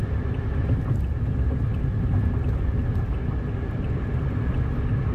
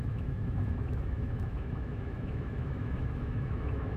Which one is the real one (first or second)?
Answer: first